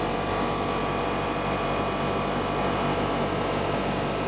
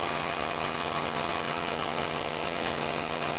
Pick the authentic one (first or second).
first